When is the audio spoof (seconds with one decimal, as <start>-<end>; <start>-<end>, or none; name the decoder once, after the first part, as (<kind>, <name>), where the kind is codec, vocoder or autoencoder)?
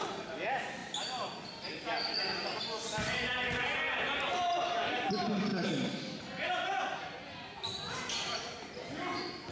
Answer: none